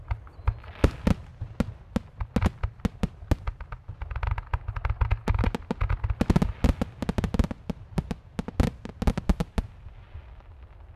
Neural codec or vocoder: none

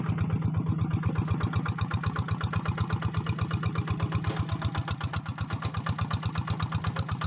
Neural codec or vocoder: none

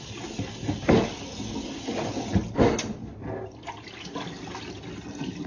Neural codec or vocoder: none